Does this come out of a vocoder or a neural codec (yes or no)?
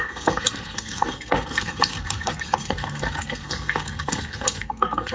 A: yes